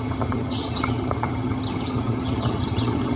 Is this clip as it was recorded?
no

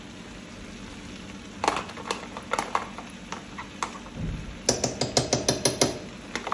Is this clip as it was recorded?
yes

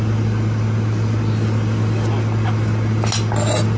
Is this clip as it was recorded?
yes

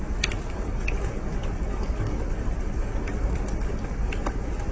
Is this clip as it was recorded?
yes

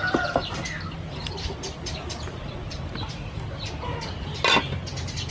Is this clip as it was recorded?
yes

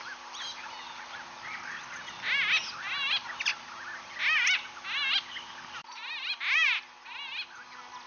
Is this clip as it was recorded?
yes